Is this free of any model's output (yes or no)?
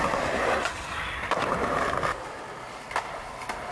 yes